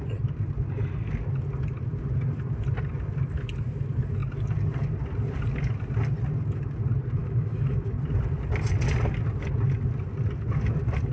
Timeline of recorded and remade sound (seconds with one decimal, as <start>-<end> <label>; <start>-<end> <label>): 0.0-7.2 recorded; 7.2-7.9 remade; 7.9-11.1 recorded